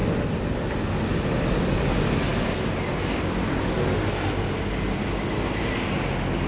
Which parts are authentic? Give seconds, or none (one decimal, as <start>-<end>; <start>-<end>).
0.0-6.5